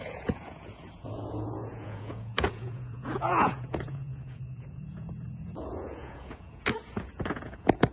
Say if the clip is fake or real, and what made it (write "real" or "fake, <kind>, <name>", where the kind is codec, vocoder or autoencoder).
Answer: fake, vocoder, Vocos